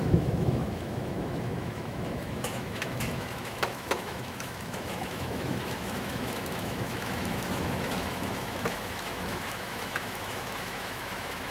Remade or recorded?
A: remade